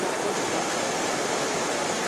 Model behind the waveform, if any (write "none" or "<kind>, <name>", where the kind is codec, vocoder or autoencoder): none